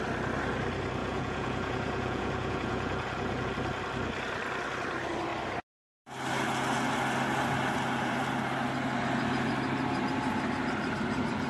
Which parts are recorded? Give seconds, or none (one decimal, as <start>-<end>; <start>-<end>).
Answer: 0.0-1.0; 3.5-11.5